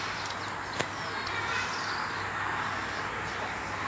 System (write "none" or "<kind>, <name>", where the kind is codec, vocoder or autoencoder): none